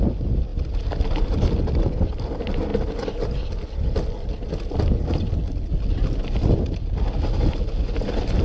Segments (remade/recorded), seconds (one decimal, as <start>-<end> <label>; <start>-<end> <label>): 0.0-8.4 recorded